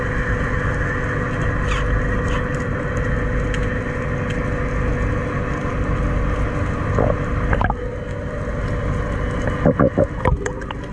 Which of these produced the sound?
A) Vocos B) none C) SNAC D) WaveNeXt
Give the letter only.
B